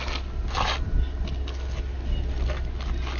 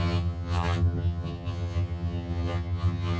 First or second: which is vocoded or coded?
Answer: second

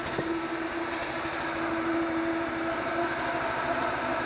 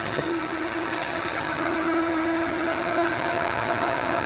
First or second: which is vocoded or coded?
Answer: second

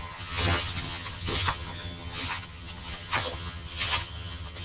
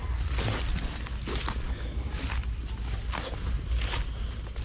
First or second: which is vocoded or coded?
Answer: first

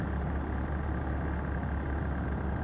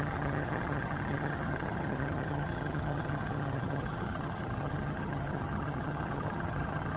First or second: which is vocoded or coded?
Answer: second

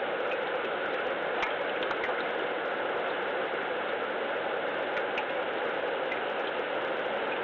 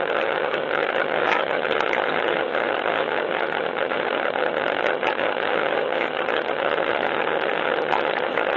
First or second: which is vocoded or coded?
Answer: second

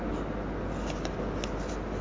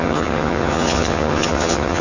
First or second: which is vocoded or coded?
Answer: second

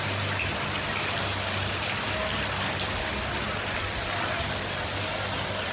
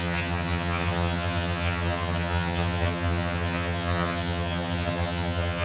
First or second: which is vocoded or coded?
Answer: second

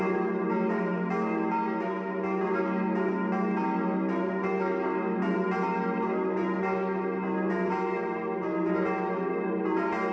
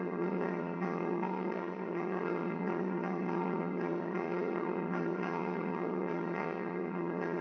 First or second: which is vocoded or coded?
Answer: second